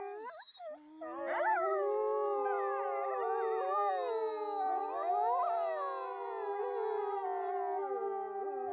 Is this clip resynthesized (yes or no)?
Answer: no